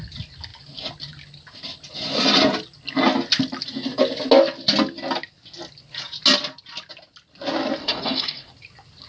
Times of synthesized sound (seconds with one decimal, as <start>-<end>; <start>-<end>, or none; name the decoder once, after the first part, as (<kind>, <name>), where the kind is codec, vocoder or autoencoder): 7.8-8.5 (codec, DAC)